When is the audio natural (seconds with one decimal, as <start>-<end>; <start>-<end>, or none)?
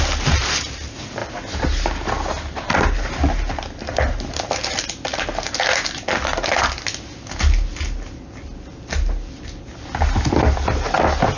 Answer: 0.0-11.4